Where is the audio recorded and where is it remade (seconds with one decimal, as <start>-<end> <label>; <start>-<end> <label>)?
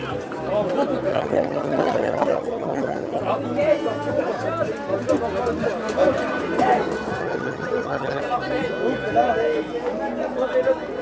0.0-1.1 recorded; 1.1-3.2 remade; 3.2-7.2 recorded; 7.2-8.2 remade; 8.2-11.0 recorded